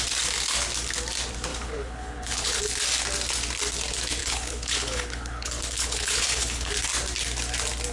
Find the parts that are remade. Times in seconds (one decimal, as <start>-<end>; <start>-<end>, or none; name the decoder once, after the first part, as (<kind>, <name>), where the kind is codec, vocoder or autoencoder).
1.5-2.6 (codec, HILCodec); 4.2-6.7